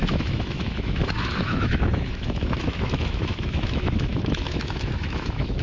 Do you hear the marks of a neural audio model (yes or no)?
yes